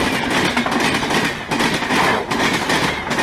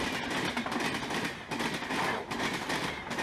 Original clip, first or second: first